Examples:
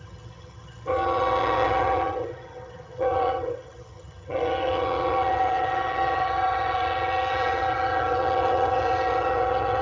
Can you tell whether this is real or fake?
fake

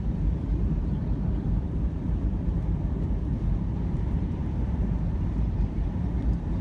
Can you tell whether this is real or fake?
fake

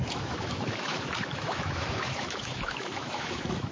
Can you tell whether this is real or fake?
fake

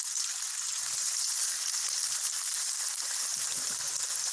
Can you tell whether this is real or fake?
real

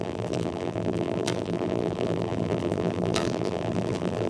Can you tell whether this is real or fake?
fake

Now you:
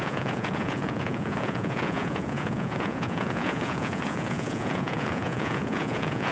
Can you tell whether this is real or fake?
fake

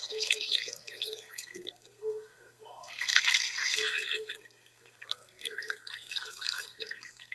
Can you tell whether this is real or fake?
fake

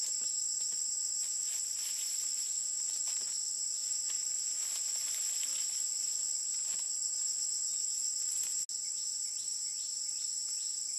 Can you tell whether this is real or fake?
real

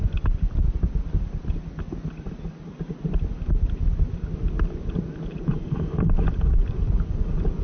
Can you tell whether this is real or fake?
real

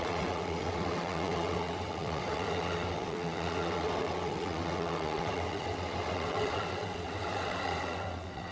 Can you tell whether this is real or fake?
fake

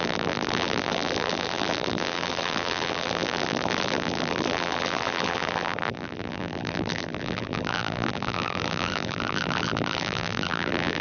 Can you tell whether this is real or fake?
fake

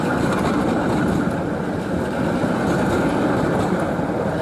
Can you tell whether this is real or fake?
real